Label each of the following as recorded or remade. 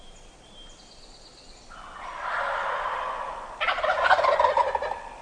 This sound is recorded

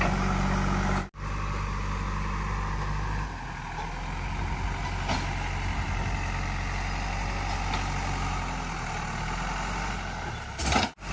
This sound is recorded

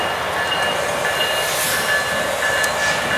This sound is recorded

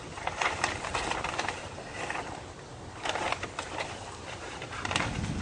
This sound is recorded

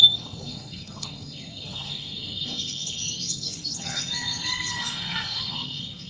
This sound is remade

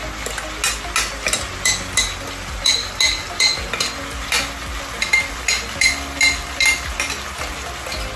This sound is recorded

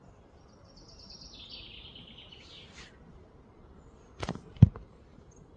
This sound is recorded